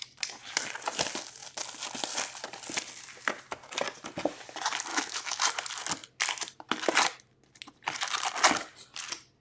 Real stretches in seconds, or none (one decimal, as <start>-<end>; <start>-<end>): 0.0-4.9; 5.4-9.4